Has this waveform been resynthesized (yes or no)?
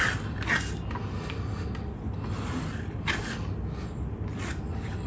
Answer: no